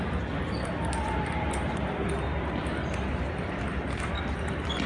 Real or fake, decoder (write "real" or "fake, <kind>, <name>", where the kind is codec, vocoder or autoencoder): real